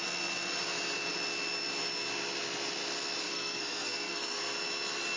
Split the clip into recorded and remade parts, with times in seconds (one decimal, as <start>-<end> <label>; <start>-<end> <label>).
0.0-3.2 recorded; 3.2-4.4 remade; 4.4-5.2 recorded